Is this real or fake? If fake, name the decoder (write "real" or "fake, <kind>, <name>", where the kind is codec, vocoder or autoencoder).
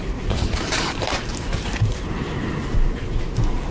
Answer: fake, vocoder, BigVGAN v2